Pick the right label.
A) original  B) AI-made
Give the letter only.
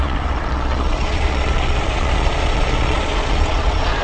B